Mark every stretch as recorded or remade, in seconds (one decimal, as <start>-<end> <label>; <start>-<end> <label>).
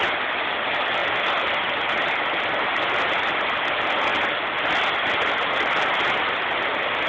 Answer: 0.0-7.1 recorded